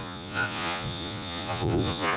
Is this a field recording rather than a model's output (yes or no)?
no